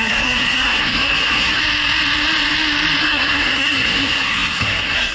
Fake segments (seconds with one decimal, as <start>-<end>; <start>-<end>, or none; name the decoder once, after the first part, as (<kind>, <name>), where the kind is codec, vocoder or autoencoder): 0.0-1.6 (codec, SNAC); 3.0-5.1